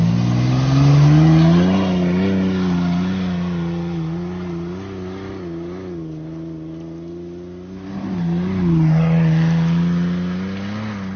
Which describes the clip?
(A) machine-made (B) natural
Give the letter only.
B